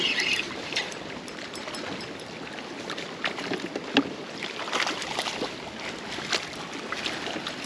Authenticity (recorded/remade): recorded